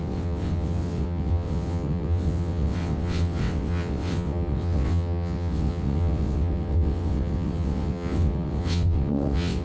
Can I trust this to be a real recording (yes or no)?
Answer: no